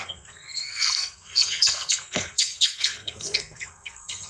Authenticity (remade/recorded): remade